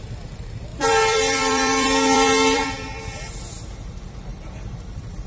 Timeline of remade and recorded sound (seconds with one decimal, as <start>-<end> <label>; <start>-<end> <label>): 0.0-0.7 recorded; 0.7-3.3 remade; 3.3-4.3 recorded; 4.3-5.3 remade